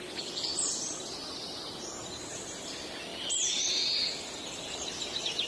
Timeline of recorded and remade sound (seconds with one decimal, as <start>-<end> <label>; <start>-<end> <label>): 0.0-5.5 recorded